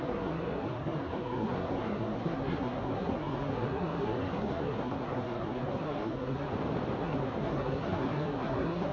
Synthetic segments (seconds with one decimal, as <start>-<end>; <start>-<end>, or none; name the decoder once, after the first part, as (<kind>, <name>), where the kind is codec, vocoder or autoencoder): 0.0-6.5 (codec, SNAC); 7.0-8.9